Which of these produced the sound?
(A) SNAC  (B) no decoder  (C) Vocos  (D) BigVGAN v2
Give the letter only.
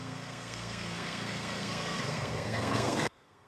A